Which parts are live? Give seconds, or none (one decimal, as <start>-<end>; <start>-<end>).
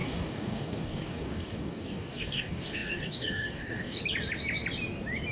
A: 4.0-5.3